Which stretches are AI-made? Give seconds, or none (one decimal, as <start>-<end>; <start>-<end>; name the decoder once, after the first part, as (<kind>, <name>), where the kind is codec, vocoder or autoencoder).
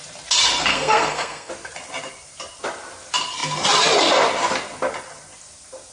0.7-1.5 (codec, SNAC)